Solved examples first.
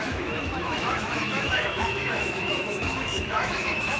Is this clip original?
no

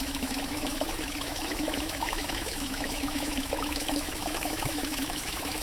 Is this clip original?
no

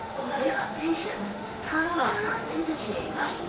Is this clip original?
no